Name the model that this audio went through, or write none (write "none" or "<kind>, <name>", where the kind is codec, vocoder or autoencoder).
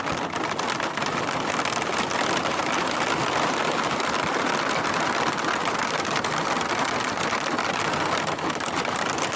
none